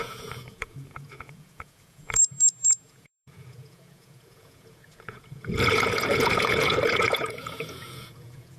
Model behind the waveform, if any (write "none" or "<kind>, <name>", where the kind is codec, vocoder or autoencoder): vocoder, Vocos